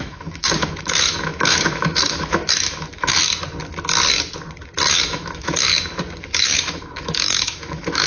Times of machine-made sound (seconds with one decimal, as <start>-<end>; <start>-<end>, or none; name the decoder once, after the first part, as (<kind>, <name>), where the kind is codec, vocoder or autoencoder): 0.0-3.2 (autoencoder, DAC-VAE); 4.8-5.7; 6.4-8.1